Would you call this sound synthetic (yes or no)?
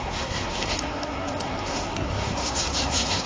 yes